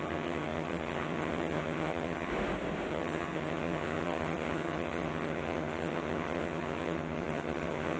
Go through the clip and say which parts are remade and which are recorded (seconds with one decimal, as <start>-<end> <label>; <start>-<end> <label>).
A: 0.0-2.3 remade; 2.3-2.9 recorded; 2.9-8.0 remade